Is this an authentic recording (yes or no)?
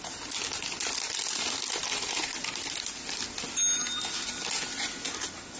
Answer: yes